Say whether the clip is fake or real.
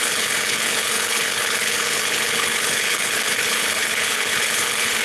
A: fake